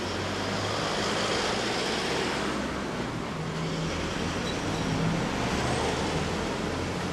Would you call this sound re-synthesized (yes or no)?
no